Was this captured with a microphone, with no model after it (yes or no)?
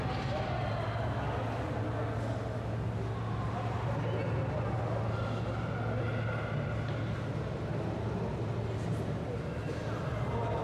yes